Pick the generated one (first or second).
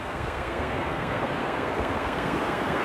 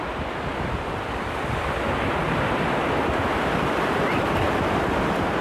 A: first